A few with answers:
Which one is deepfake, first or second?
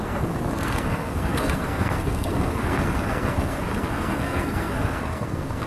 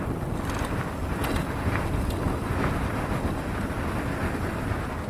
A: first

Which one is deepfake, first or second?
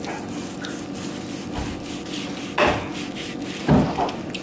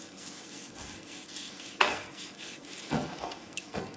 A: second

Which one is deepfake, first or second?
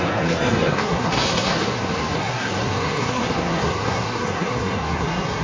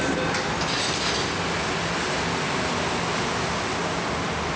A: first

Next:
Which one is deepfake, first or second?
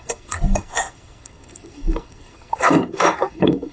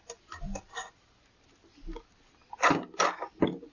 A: first